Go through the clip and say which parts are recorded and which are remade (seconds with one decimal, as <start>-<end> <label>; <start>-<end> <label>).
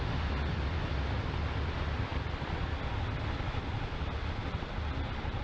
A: 0.0-5.4 recorded